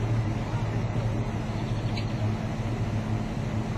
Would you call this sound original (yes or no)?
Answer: yes